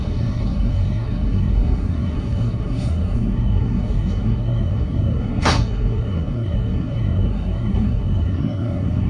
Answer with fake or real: fake